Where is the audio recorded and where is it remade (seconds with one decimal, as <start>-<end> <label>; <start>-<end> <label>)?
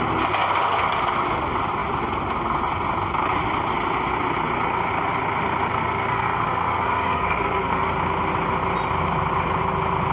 0.0-5.7 recorded; 5.7-7.9 remade; 7.9-10.1 recorded